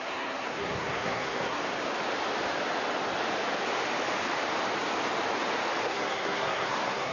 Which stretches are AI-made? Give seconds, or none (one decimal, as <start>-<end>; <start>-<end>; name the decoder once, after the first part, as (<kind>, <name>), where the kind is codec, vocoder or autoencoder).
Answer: 0.0-1.6 (codec, SNAC); 5.9-7.1